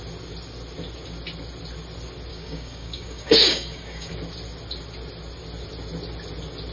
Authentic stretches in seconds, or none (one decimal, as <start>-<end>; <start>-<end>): 0.0-2.3; 4.1-6.7